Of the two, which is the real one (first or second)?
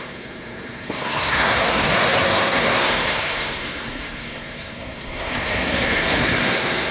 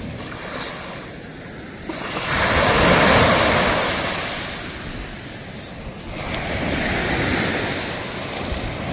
second